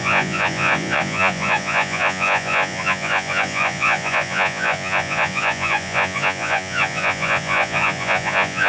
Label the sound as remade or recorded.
remade